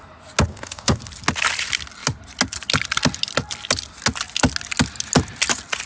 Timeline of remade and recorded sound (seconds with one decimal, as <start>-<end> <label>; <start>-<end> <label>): 0.0-0.5 recorded; 0.5-1.0 remade; 1.0-5.9 recorded